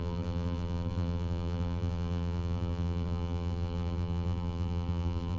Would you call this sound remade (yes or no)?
yes